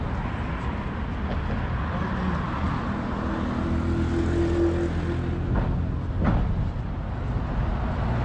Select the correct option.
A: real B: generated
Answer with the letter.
A